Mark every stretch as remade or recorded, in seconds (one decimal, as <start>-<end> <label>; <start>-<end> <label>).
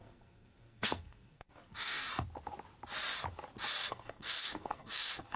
0.0-2.1 remade; 2.1-3.9 recorded; 3.9-5.4 remade